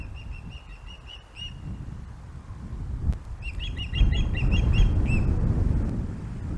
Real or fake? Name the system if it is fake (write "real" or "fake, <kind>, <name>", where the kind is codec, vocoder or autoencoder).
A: real